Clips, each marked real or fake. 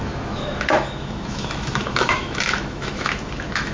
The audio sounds fake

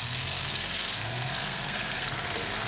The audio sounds fake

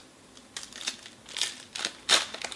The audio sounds real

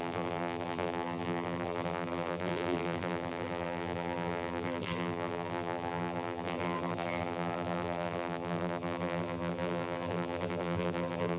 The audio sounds fake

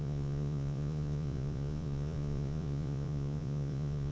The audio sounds fake